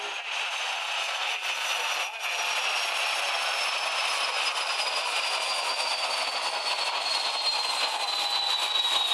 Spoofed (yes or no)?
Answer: no